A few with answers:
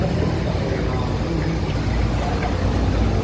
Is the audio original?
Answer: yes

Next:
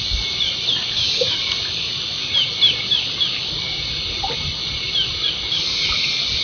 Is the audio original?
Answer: yes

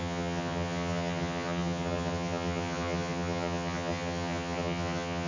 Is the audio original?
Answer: no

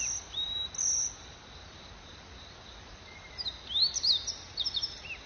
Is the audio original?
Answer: yes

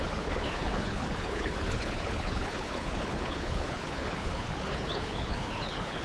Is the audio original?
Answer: no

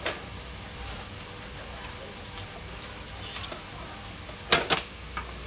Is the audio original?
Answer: yes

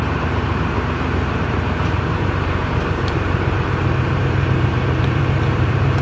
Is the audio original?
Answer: no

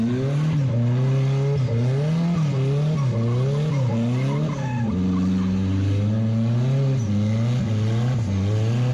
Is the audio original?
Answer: yes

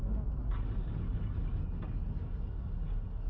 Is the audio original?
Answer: yes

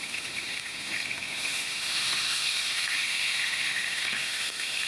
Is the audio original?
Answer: no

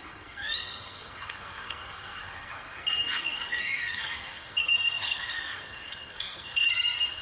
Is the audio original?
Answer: no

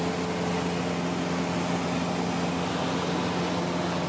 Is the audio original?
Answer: yes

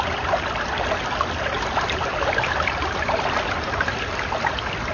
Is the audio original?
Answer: yes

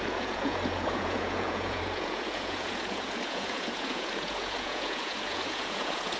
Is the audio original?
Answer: no